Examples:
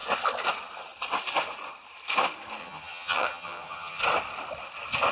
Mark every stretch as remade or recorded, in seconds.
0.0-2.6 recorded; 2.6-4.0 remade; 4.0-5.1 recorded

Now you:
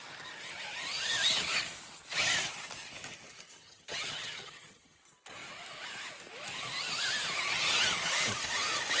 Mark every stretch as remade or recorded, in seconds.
0.0-3.6 recorded; 3.6-5.0 remade; 5.0-9.0 recorded

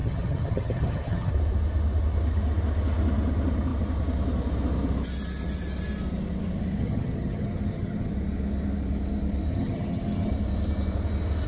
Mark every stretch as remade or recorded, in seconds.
0.0-1.3 remade; 1.3-6.8 recorded; 6.8-8.1 remade; 8.1-9.5 recorded; 9.5-10.3 remade; 10.3-11.5 recorded

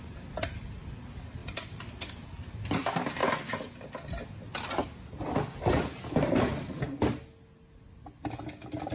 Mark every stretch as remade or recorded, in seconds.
0.0-8.9 recorded

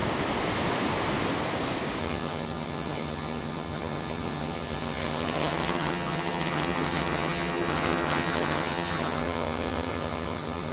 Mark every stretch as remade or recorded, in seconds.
0.0-2.0 recorded; 2.0-10.7 remade

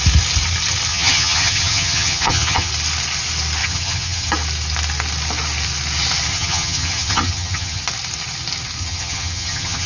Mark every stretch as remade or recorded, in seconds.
0.0-0.9 recorded; 0.9-2.7 remade; 2.7-3.6 recorded; 3.6-4.3 remade; 4.3-6.3 recorded; 6.3-7.8 remade; 7.8-8.8 recorded; 8.8-9.9 remade

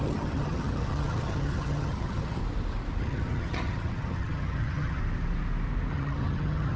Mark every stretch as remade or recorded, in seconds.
0.0-2.4 remade; 2.4-3.0 recorded; 3.0-5.0 remade; 5.0-5.9 recorded; 5.9-6.8 remade